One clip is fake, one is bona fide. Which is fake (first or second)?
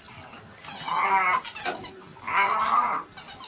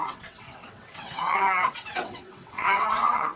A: second